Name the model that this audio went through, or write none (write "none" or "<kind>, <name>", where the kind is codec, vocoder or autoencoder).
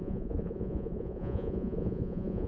vocoder, Vocos